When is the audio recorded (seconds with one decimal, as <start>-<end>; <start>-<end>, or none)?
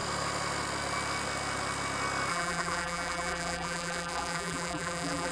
0.0-2.3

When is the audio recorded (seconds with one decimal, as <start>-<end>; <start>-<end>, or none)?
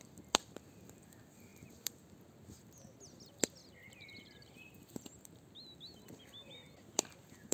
0.0-7.5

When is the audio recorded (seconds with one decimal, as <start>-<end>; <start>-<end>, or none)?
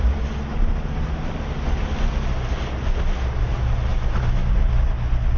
0.0-5.4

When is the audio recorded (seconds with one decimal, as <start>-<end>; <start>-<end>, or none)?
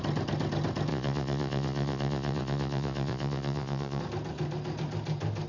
0.0-0.9; 4.0-5.5